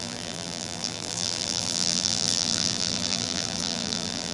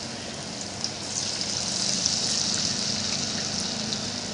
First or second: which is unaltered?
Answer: second